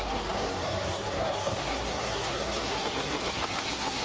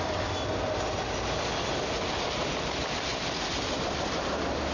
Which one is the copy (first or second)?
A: first